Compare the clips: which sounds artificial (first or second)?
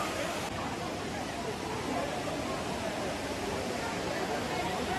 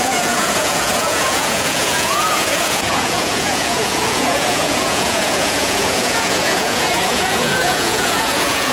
second